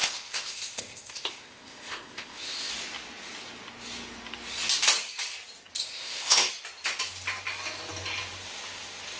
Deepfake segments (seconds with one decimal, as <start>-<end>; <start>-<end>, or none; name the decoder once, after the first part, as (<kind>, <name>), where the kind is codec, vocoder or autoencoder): 0.0-2.7 (codec, ZipCodec); 5.8-6.5